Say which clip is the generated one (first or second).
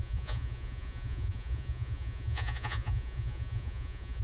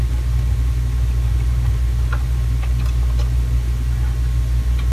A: first